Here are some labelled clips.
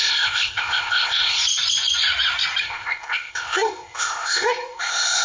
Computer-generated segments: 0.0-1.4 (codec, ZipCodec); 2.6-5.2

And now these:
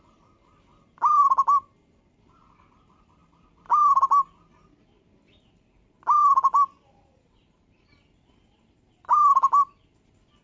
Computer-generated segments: none

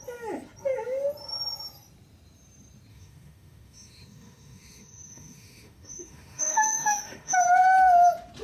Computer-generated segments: 2.9-7.4 (autoencoder, DAC-VAE)

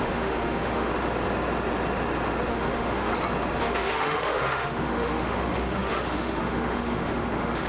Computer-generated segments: 0.0-0.9 (autoencoder, DAC-VAE); 2.5-3.1; 3.6-7.7

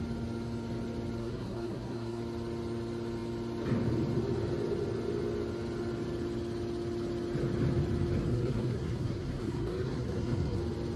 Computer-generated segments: 1.2-2.2 (codec, SNAC); 8.3-10.6

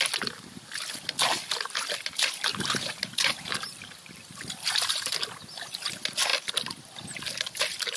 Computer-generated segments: 2.5-5.1 (vocoder, BigVGAN v2)

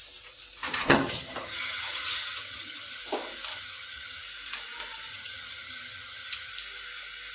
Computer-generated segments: 0.8-3.0 (vocoder, HiFi-GAN); 3.5-4.2; 5.1-6.5